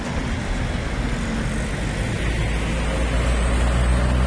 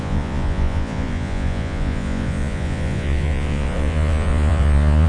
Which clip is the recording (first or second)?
first